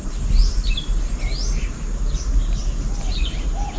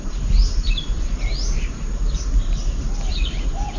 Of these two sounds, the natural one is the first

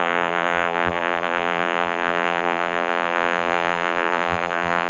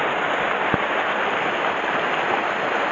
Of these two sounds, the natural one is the second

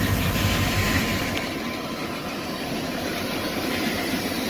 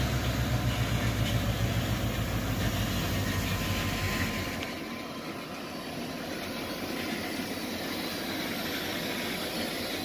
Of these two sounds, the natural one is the second